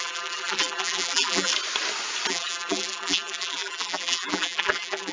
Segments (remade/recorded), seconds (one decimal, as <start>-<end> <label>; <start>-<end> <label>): 0.0-1.5 remade; 1.5-2.3 recorded; 2.3-5.1 remade